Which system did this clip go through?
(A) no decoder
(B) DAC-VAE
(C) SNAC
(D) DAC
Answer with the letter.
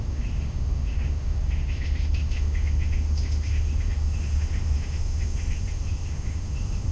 B